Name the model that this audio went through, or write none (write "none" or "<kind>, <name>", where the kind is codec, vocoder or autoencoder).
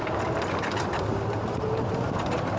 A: none